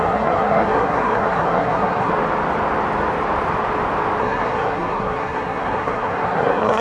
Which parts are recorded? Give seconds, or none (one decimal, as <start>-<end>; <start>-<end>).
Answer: 2.1-4.2

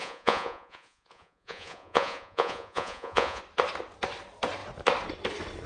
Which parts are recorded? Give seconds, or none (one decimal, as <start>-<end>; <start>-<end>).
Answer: 3.4-5.7

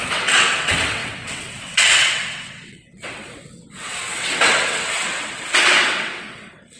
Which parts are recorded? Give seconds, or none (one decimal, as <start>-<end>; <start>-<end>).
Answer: none